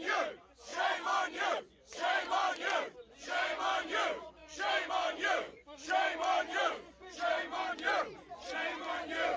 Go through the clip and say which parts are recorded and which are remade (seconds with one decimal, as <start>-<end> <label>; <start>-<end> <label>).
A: 0.0-9.4 remade